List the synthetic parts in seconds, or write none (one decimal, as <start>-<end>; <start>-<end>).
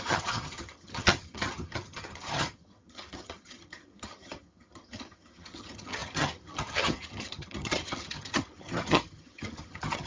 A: 0.0-10.1